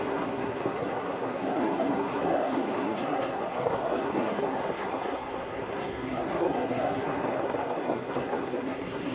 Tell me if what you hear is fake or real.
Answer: fake